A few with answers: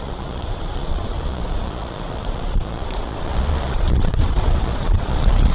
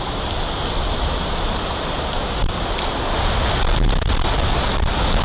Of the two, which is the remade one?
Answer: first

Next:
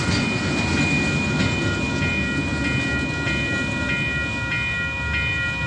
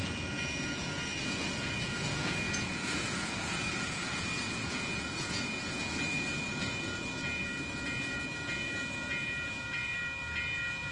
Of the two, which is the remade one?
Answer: second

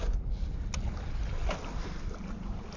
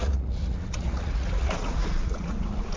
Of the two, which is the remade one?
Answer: second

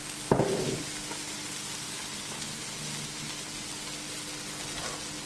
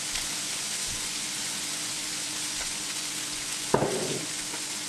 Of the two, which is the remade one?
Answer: second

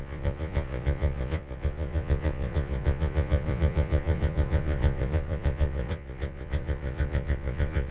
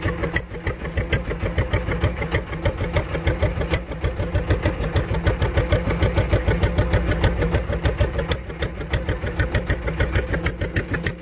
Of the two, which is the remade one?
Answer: first